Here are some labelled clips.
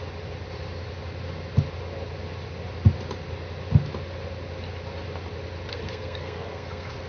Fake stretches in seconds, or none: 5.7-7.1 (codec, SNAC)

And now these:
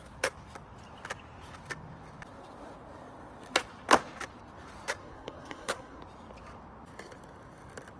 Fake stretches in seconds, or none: 5.0-6.0 (codec, SNAC)

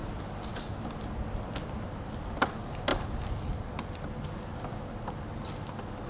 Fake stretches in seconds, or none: none

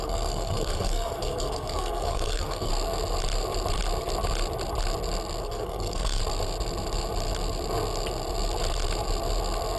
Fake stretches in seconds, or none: 0.0-2.7 (codec, SNAC); 5.4-6.2